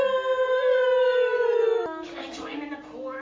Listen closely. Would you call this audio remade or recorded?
recorded